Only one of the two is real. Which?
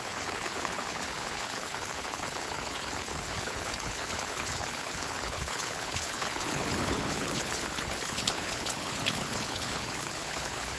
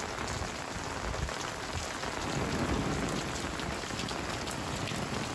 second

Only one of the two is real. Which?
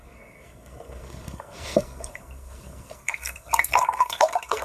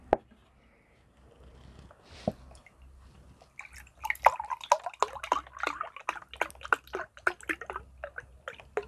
second